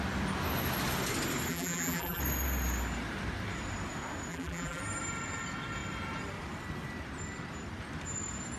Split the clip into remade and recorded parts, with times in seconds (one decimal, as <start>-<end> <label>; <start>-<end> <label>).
0.0-1.5 recorded; 1.5-2.2 remade; 2.2-4.3 recorded; 4.3-4.8 remade; 4.8-8.6 recorded